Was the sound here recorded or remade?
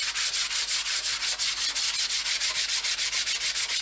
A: recorded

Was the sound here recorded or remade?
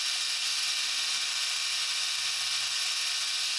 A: recorded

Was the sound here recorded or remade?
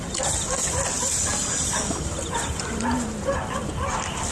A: recorded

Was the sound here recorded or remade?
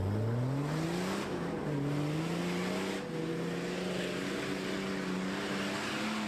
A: recorded